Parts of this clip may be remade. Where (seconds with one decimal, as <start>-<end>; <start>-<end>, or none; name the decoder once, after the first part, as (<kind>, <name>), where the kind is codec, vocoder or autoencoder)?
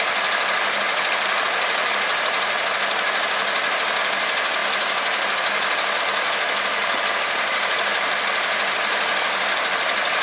0.0-4.6 (vocoder, BigVGAN v2); 6.0-10.2